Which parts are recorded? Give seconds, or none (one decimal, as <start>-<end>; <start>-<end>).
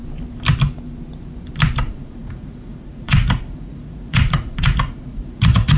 0.0-1.9